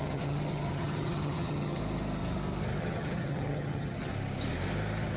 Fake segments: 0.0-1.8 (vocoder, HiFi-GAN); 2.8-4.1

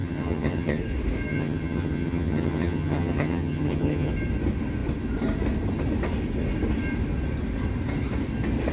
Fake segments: 0.0-0.8 (vocoder, HiFi-GAN); 1.3-4.1

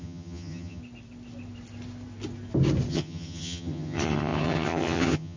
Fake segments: 0.0-0.8 (vocoder, HiFi-GAN); 2.9-5.4

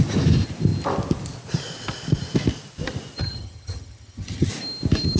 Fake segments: 3.2-4.5 (vocoder, HiFi-GAN)

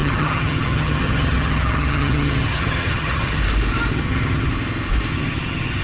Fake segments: 0.0-3.4 (vocoder, HiFi-GAN); 3.9-4.5; 5.1-5.8

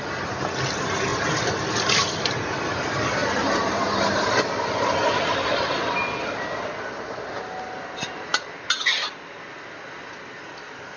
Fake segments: none

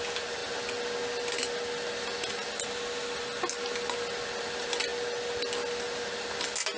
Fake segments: none

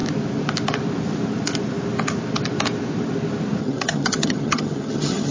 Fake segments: 3.6-5.3 (vocoder, HiFi-GAN)